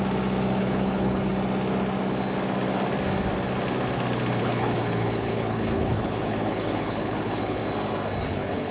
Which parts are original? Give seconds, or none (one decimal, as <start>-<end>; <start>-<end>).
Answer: 0.0-0.6; 1.3-4.4; 7.6-8.2